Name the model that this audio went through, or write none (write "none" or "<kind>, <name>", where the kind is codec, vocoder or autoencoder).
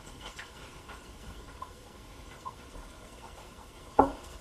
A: codec, SNAC